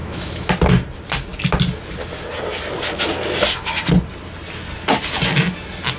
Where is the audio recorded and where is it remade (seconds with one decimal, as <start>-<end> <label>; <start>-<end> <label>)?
0.0-0.5 remade; 0.5-6.0 recorded